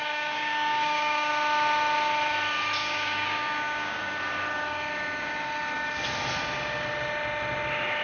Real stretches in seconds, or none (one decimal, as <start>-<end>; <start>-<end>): 1.3-2.8; 4.0-8.0